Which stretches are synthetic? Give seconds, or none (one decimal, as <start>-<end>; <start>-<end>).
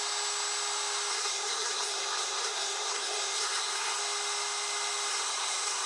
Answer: 1.1-4.0; 5.1-5.9